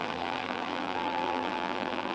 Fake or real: fake